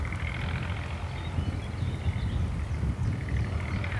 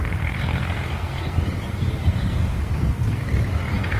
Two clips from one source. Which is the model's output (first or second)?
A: second